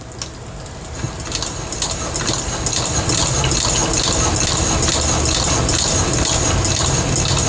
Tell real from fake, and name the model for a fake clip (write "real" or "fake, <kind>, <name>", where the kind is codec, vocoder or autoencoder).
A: real